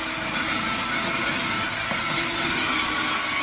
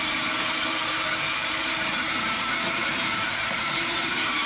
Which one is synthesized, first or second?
second